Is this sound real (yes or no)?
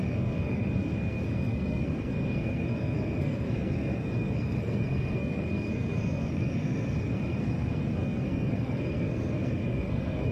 no